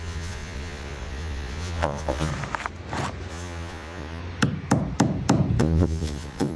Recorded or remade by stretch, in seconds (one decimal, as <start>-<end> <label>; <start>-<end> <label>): 0.0-2.3 remade; 2.3-3.3 recorded; 3.3-4.2 remade; 4.2-5.6 recorded; 5.6-6.6 remade